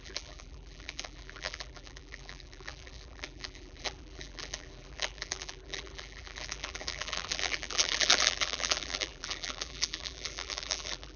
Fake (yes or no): yes